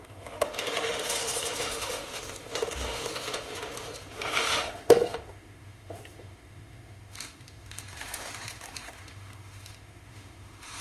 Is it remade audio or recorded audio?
remade